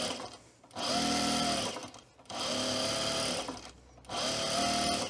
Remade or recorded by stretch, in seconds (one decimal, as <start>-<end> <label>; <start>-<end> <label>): 0.0-5.1 recorded